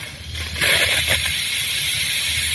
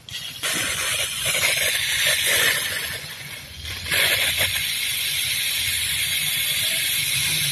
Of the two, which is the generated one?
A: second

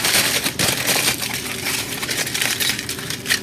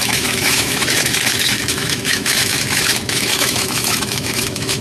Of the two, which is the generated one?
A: second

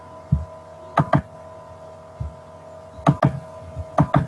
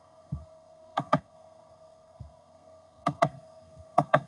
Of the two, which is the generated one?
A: second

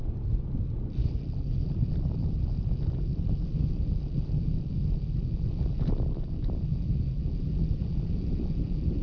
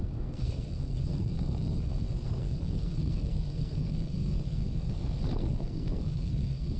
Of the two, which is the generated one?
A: second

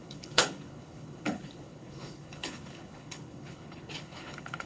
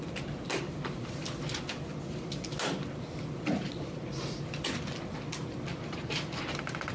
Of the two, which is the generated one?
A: first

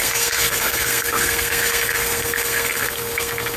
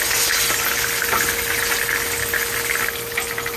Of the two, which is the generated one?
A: first